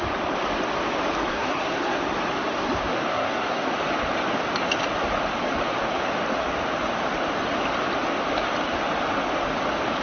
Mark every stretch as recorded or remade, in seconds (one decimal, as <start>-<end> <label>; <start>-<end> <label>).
0.0-1.3 recorded; 1.3-2.0 remade; 2.0-3.1 recorded; 3.1-3.7 remade; 3.7-10.0 recorded